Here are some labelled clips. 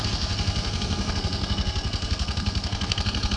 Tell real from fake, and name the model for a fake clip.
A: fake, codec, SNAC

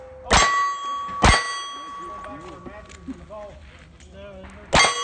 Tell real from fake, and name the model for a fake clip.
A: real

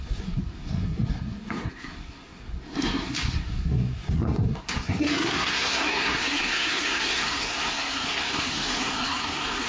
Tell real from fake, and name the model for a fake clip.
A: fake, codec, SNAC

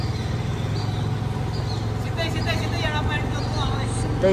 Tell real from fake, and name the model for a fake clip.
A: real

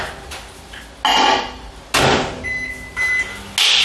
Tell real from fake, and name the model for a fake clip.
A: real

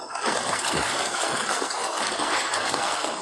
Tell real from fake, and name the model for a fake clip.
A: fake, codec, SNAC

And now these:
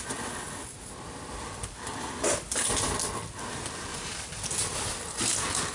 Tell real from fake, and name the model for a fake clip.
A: real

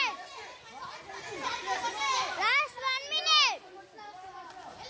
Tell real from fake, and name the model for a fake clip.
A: real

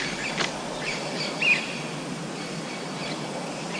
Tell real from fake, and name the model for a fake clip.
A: real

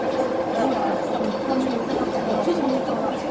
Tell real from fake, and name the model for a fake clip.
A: real